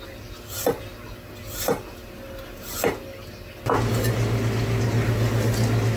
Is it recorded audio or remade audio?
recorded